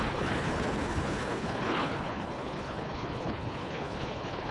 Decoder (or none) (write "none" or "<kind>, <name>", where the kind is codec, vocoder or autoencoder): codec, HILCodec